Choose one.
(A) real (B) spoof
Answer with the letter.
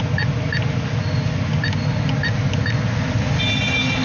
A